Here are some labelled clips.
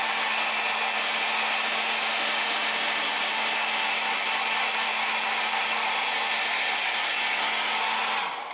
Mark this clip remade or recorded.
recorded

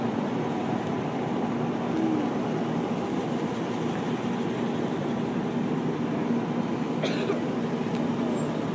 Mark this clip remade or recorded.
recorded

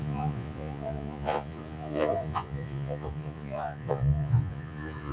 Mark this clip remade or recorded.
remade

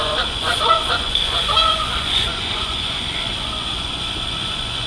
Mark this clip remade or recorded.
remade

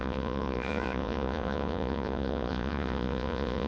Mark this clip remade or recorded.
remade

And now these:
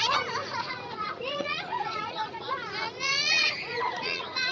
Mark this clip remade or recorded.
remade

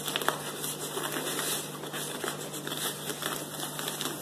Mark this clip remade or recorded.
recorded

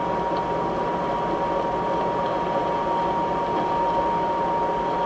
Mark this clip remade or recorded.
recorded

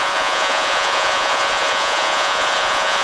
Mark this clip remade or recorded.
remade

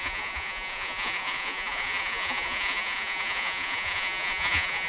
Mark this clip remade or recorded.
remade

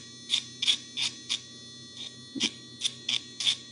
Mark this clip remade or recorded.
recorded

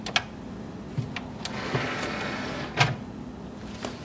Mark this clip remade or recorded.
recorded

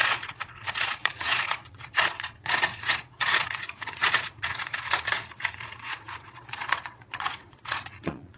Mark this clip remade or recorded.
remade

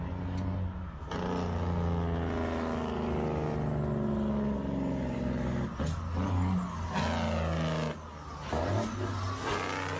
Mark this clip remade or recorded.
recorded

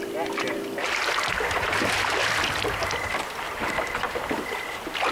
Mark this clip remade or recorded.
recorded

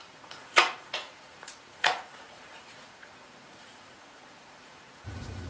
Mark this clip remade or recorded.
remade